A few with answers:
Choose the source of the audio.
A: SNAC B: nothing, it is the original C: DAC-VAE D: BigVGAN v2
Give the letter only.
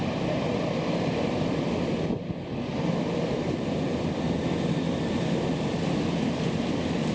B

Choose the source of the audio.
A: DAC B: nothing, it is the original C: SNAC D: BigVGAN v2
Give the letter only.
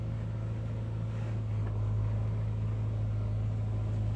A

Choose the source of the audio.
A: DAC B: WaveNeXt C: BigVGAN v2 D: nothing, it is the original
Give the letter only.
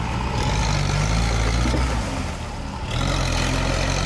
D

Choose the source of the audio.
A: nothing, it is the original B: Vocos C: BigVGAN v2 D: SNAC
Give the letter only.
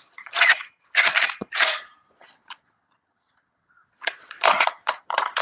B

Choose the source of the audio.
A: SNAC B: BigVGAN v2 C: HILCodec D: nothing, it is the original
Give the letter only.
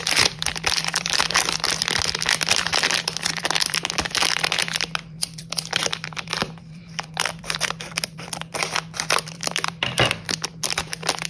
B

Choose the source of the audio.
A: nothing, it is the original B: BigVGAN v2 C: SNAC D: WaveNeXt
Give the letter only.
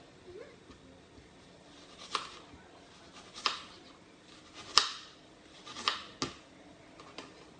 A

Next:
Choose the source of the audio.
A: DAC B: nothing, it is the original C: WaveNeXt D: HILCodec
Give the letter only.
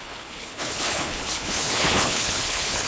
D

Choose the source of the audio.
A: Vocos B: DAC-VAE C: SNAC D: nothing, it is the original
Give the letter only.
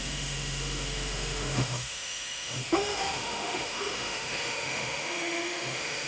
B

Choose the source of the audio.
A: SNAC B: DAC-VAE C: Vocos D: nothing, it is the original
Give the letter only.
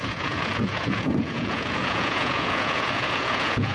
C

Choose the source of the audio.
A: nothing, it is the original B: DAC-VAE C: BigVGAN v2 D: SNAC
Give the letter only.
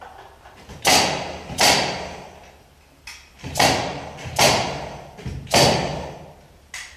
A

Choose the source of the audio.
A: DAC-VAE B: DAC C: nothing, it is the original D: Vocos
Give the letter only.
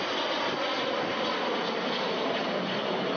C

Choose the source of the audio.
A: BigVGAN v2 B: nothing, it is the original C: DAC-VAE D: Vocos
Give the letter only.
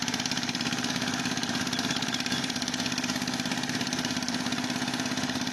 A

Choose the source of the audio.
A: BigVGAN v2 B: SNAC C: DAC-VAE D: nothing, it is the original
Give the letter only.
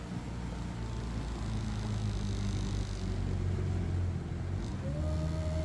D